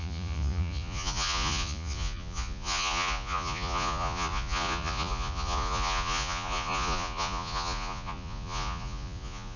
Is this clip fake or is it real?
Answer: fake